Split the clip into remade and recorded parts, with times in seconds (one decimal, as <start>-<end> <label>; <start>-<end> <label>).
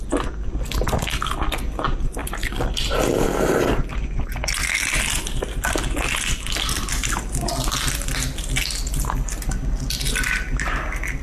0.0-11.2 recorded